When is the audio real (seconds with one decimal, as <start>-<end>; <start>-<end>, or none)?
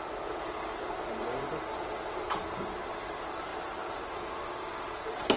0.0-5.4